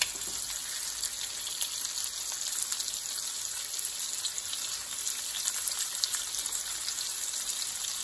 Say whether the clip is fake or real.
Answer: real